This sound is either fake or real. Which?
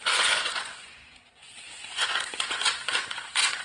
fake